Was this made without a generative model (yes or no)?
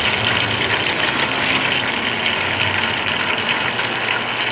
yes